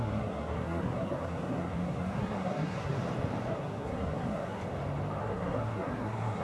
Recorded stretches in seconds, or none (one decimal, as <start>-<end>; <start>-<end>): 3.0-3.5; 4.6-5.2